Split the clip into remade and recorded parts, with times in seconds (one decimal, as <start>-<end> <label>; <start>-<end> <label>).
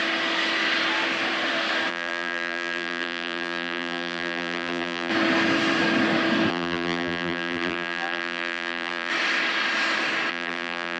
0.0-1.9 recorded; 1.9-5.1 remade; 5.1-6.5 recorded; 6.5-9.1 remade; 9.1-10.3 recorded; 10.3-11.0 remade